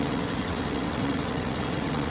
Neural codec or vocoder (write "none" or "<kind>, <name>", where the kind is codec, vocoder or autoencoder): vocoder, WaveNeXt